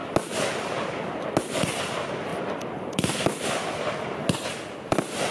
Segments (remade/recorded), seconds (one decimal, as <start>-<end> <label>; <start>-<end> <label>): 0.0-5.3 recorded